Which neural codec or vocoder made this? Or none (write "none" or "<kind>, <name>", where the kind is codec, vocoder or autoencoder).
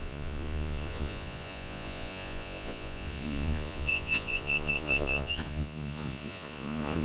vocoder, Vocos